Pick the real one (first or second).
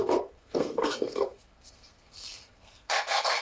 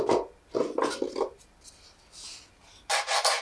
second